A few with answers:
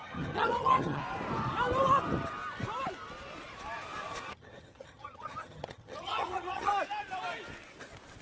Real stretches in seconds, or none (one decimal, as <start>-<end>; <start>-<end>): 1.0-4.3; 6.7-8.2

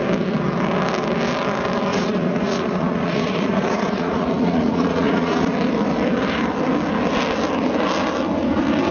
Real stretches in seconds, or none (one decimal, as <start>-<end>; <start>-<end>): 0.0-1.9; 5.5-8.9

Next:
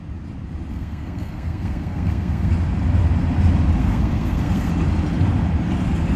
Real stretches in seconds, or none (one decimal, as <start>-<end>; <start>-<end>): 0.0-0.7; 2.5-3.8; 4.7-6.2

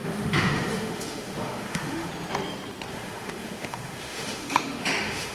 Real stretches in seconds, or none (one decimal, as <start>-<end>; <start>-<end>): 2.1-2.9

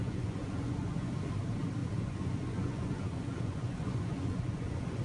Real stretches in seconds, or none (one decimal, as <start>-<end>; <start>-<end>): 1.1-1.8